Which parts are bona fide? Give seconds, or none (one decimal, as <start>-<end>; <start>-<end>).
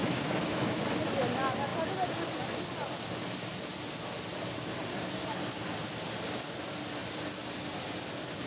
0.8-8.5